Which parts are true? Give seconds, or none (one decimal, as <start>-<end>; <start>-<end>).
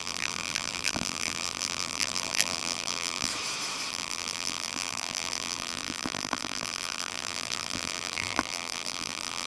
3.3-3.9